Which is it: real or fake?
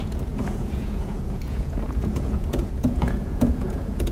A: fake